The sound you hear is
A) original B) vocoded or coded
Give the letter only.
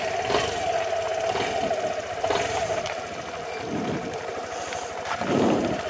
A